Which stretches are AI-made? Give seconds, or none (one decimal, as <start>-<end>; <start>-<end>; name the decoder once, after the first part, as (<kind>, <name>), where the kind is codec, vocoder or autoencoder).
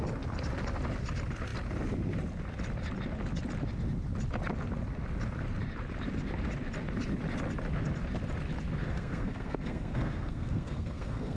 8.8-11.4 (codec, SNAC)